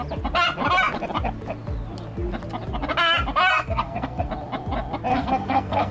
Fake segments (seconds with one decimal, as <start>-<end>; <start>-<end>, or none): 3.5-4.3; 5.1-5.9